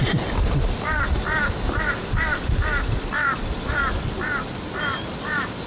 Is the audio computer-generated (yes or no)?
no